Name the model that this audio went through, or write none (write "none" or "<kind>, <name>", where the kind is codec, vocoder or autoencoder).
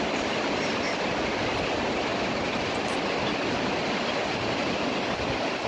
none